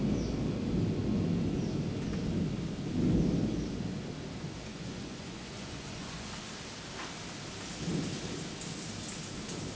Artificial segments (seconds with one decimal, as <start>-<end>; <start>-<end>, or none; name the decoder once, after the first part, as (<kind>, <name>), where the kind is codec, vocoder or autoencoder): 4.7-6.3 (vocoder, Vocos)